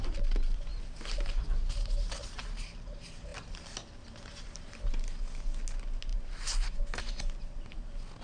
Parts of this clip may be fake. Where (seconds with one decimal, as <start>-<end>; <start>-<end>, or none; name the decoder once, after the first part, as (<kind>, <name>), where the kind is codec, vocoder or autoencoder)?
none